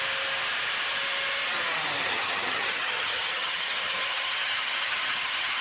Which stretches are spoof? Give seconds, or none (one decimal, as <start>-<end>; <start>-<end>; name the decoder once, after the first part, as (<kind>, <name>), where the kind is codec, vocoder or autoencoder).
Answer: 2.0-5.6 (vocoder, HiFi-GAN)

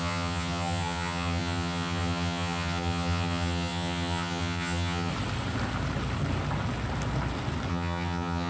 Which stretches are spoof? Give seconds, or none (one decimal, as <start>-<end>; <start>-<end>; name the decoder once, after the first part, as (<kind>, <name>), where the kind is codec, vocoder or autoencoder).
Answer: 0.0-5.1 (vocoder, HiFi-GAN); 7.7-8.5

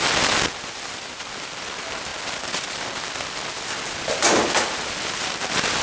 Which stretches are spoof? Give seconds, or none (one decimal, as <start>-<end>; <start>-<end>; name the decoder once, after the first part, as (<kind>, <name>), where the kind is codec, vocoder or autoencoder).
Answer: none

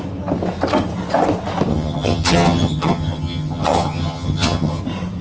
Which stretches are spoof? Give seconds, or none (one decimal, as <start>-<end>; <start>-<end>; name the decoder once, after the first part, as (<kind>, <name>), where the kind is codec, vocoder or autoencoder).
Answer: 1.7-4.8 (vocoder, HiFi-GAN)